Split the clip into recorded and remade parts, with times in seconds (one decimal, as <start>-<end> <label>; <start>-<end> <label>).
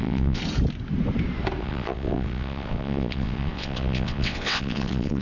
0.0-0.4 remade; 0.4-1.6 recorded; 1.6-5.2 remade